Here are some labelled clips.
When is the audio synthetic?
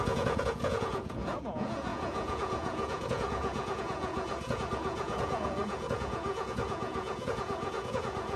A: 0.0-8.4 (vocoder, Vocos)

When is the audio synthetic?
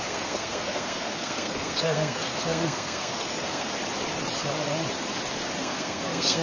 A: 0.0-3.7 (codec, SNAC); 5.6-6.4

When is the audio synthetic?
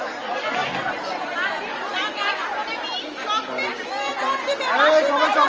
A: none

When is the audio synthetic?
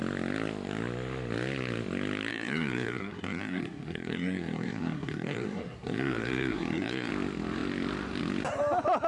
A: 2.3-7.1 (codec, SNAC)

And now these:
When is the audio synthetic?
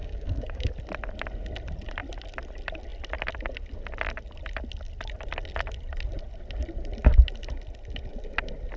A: 0.0-0.7 (codec, DAC)